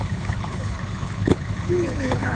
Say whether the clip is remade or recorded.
remade